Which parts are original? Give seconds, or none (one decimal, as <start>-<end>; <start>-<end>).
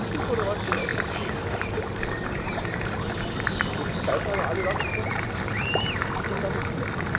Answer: 0.0-0.9; 4.1-5.1; 6.1-7.2